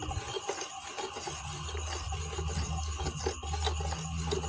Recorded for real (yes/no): yes